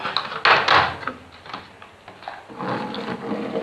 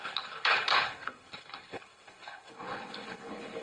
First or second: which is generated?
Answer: second